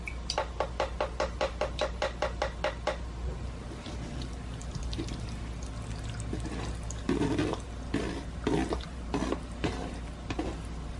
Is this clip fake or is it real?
real